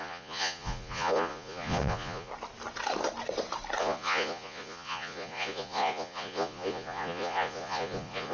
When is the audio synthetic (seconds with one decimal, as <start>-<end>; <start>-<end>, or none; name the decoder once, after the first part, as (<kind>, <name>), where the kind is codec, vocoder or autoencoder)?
0.0-2.3 (vocoder, Vocos); 3.8-8.3